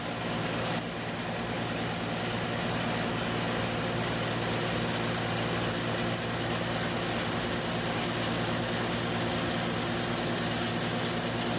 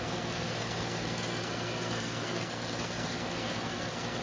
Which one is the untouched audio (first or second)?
first